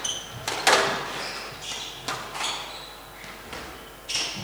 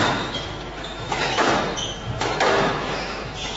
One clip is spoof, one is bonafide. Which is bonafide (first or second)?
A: first